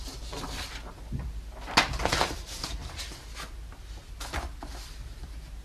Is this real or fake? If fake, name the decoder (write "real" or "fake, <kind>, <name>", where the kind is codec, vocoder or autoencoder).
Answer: real